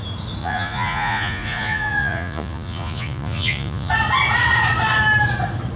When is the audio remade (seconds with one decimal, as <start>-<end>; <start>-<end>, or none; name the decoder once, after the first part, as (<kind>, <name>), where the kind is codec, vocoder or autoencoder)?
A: 0.4-3.9 (vocoder, Vocos)